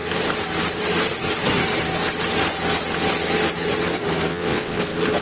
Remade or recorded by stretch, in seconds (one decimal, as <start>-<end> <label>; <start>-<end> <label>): 0.0-4.3 recorded; 4.3-4.8 remade; 4.8-5.2 recorded